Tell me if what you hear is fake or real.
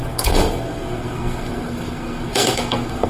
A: fake